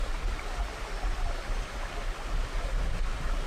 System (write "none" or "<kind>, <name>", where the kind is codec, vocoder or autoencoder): none